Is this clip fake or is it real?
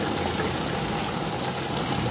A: real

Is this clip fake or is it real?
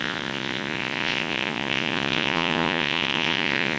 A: fake